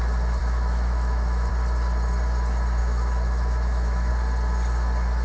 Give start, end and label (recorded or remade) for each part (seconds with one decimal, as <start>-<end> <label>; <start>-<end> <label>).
0.0-0.4 recorded; 0.4-1.5 remade; 1.5-2.8 recorded; 2.8-4.1 remade; 4.1-5.2 recorded